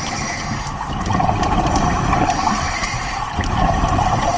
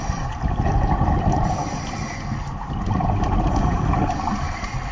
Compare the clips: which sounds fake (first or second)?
first